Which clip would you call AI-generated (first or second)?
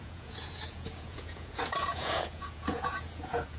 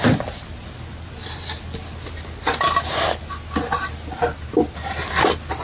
first